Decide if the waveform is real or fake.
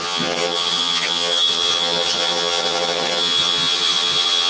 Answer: fake